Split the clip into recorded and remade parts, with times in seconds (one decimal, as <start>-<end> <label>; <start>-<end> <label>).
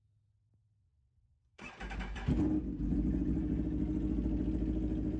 0.0-0.8 recorded; 0.8-1.7 remade; 1.7-5.2 recorded